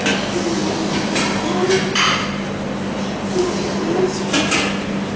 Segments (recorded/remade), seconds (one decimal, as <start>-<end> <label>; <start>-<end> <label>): 0.0-5.2 recorded